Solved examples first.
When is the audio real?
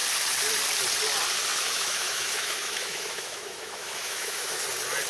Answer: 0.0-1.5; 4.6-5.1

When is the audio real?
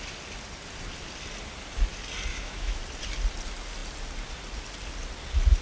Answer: 0.0-2.3; 2.8-5.6